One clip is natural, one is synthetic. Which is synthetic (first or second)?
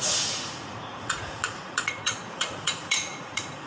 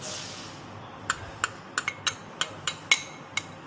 first